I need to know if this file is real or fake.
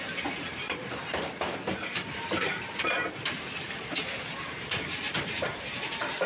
fake